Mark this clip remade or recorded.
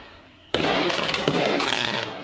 remade